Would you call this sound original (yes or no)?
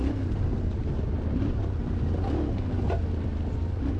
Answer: yes